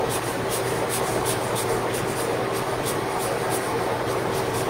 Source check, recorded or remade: recorded